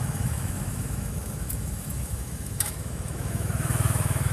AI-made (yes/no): yes